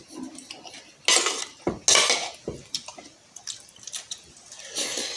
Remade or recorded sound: recorded